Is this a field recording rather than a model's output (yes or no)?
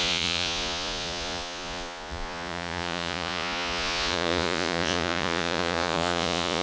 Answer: no